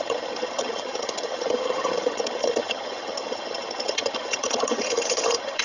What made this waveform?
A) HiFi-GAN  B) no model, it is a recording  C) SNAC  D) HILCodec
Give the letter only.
A